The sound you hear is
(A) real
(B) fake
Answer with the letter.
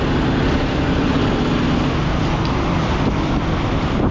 A